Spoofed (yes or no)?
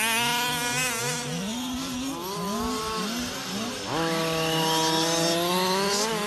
no